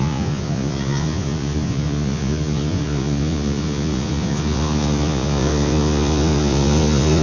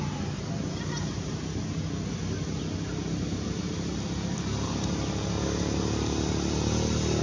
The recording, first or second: second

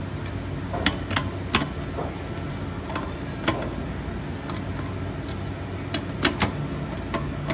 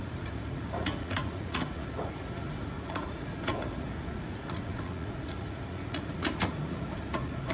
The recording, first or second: first